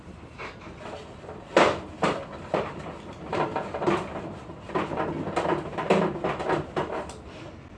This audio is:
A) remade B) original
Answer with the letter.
B